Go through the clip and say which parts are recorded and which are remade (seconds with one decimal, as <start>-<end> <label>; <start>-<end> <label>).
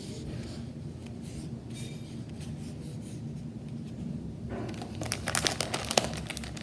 0.0-6.6 recorded